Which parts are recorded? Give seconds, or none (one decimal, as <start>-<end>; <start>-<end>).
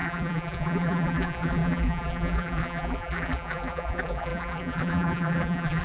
none